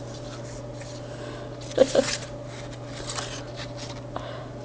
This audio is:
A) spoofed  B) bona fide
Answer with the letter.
B